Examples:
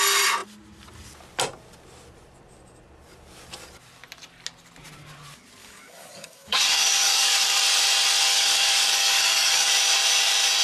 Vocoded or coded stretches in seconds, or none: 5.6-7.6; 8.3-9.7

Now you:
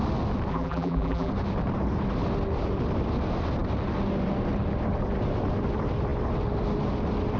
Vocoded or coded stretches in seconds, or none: 0.5-1.3

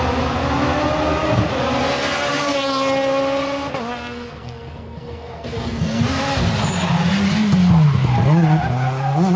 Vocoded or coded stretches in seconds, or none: 3.9-6.0

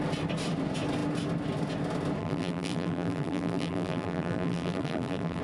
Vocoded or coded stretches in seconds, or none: 2.2-5.4

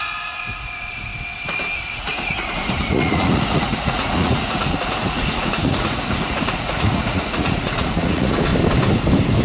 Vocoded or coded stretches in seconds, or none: 0.0-1.1; 1.8-8.5

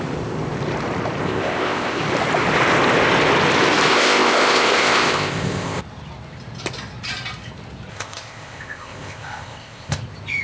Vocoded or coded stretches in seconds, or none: 1.2-2.0; 3.9-5.8; 7.9-10.0

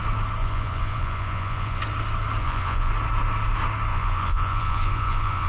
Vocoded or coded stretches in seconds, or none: 0.4-1.8; 2.4-2.9; 3.9-5.5